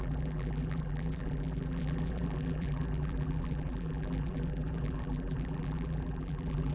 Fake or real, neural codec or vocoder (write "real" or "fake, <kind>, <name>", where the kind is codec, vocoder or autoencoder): fake, vocoder, BigVGAN v2